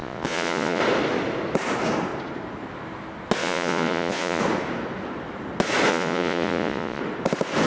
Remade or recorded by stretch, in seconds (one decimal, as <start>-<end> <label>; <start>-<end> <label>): 0.0-0.8 remade; 0.8-3.4 recorded; 3.4-4.4 remade; 4.4-5.9 recorded; 5.9-7.0 remade; 7.0-7.7 recorded